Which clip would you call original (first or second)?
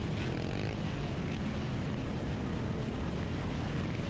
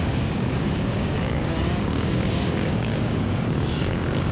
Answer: first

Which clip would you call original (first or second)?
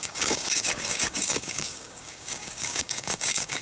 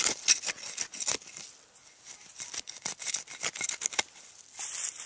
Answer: second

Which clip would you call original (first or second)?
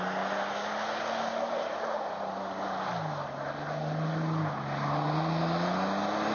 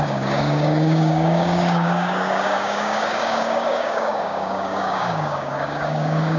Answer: first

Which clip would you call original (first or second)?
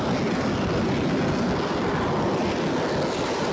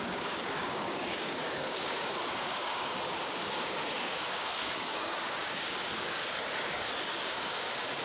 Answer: first